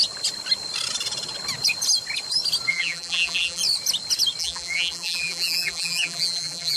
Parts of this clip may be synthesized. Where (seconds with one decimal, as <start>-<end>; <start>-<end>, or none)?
2.7-3.6; 4.4-6.8